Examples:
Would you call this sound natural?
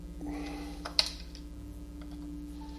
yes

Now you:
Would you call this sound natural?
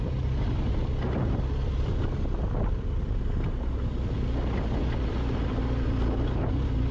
yes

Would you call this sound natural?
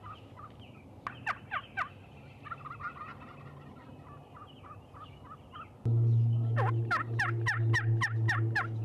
yes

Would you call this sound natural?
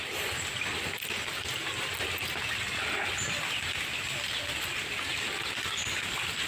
yes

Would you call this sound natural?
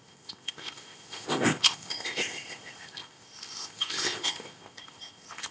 no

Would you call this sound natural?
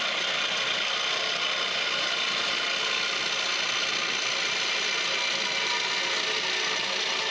yes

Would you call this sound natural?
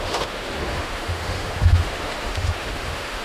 no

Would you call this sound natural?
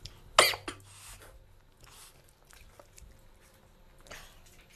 yes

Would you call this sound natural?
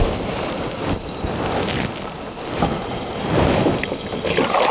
yes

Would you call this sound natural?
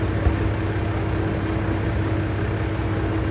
yes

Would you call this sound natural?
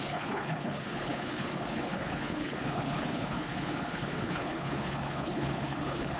no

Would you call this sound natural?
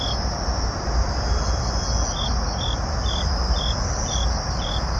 yes